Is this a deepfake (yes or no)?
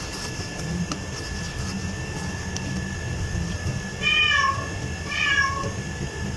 no